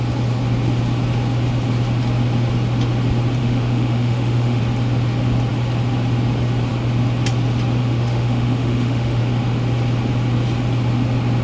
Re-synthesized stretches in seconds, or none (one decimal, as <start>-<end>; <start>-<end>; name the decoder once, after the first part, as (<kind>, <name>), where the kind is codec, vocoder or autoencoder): 3.4-4.6 (autoencoder, DAC-VAE); 7.8-9.2